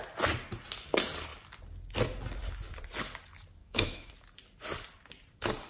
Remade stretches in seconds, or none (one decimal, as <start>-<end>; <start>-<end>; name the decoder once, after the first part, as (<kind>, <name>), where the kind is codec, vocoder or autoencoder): 3.6-4.1 (autoencoder, DAC-VAE)